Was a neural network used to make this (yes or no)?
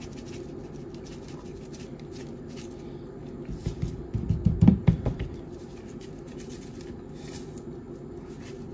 no